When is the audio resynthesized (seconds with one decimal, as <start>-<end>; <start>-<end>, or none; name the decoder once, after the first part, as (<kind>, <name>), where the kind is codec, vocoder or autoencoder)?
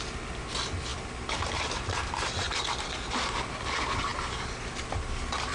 none